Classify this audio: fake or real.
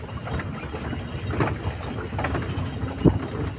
real